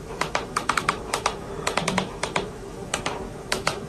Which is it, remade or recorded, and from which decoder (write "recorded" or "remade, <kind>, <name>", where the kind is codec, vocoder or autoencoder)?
remade, autoencoder, DAC-VAE